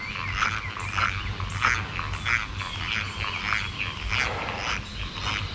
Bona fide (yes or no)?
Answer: yes